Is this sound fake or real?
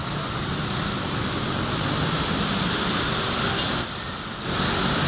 real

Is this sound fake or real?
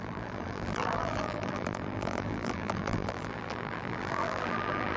fake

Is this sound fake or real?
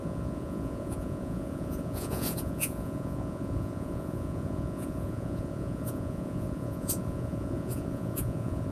fake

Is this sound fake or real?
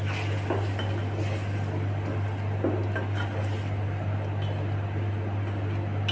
real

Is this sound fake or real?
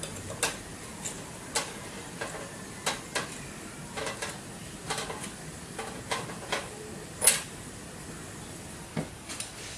real